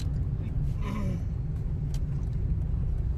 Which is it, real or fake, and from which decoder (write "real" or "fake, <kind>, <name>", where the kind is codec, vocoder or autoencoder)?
real